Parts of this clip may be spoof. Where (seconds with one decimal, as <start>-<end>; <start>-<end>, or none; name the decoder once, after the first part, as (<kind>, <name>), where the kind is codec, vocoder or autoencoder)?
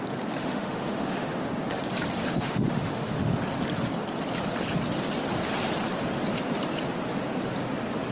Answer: 0.4-1.4 (autoencoder, DAC-VAE); 2.2-3.2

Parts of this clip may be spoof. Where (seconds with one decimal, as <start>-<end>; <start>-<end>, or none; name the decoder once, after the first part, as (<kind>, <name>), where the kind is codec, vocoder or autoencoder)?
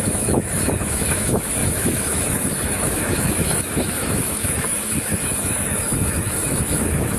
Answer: 0.0-7.2 (autoencoder, DAC-VAE)